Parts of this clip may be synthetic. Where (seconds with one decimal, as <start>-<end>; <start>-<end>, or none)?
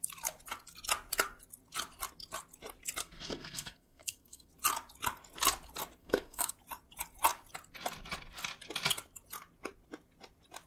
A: 3.0-4.5; 6.0-6.5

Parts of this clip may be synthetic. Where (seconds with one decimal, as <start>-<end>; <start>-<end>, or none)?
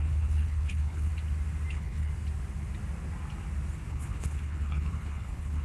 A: 0.0-1.1; 1.7-2.1; 3.9-5.6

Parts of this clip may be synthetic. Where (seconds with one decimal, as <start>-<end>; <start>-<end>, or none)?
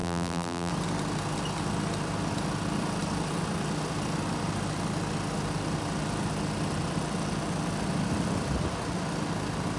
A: 0.0-0.7